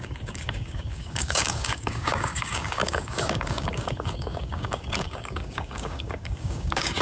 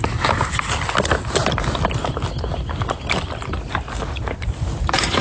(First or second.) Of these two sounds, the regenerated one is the first